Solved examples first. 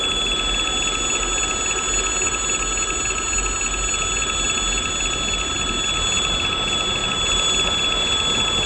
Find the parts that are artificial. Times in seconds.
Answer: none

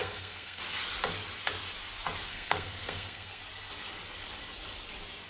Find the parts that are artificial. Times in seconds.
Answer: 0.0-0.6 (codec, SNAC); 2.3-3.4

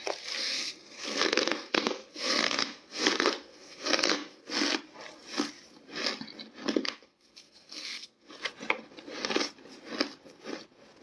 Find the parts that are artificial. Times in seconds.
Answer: 0.4-4.5 (codec, SNAC); 6.8-8.3

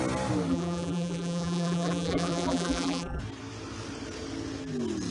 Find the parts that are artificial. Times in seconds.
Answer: 0.5-3.2 (vocoder, BigVGAN v2)